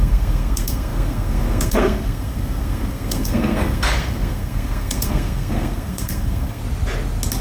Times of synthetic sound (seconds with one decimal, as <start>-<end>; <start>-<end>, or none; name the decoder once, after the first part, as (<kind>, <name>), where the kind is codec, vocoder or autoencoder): 0.0-6.6 (codec, SNAC)